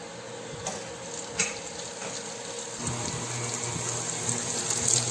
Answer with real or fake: real